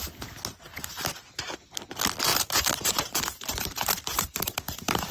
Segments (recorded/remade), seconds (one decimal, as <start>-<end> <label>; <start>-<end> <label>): 0.0-2.3 recorded; 2.3-5.1 remade

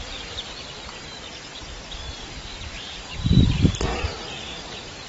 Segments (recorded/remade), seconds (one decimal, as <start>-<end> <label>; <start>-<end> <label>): 0.0-1.1 remade; 1.1-1.6 recorded; 1.6-5.1 remade